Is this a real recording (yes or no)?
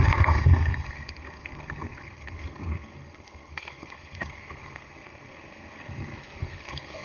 no